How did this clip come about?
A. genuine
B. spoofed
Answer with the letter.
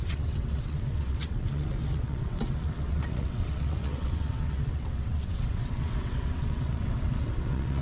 B